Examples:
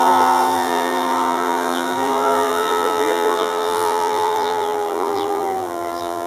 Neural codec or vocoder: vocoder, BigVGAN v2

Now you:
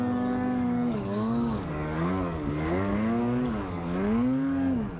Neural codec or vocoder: codec, DAC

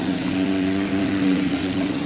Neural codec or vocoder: vocoder, WaveNeXt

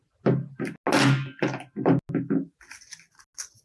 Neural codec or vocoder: none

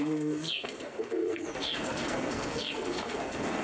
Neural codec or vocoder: codec, SNAC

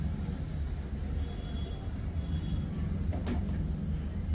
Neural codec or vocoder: none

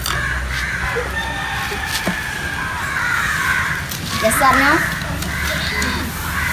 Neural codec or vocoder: none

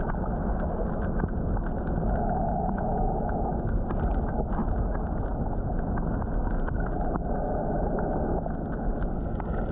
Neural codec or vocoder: none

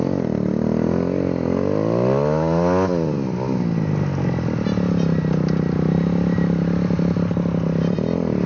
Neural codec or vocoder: none